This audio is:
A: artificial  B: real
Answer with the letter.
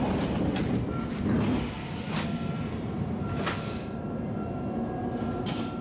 B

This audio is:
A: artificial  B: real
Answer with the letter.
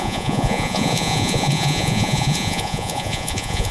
A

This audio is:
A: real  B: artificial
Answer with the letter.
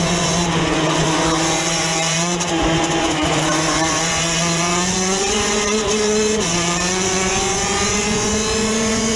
B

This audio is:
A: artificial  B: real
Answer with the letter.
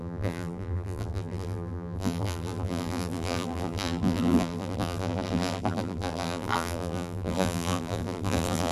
A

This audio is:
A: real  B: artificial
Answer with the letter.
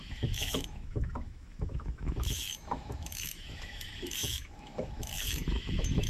B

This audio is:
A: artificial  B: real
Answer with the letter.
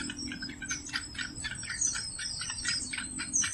B